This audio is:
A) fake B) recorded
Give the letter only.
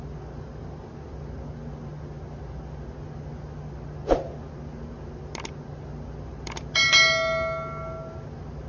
B